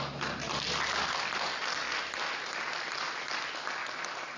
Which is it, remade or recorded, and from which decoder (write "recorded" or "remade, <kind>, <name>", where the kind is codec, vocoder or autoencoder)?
recorded